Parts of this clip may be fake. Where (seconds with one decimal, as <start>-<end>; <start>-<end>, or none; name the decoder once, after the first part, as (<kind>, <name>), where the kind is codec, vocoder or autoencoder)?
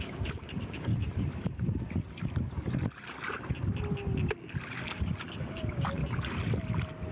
0.0-0.9 (codec, DAC); 5.2-6.0